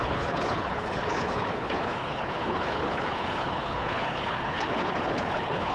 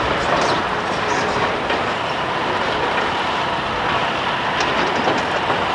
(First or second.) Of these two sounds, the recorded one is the second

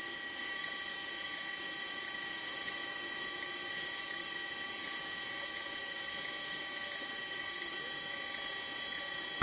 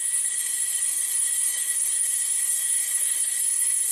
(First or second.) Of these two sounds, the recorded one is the first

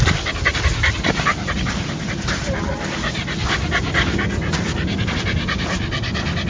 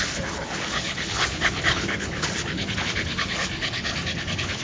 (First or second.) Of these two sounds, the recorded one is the first